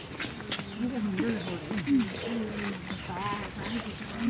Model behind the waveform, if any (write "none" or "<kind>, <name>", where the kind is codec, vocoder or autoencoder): none